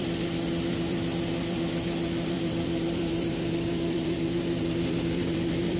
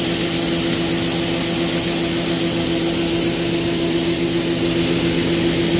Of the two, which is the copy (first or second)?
first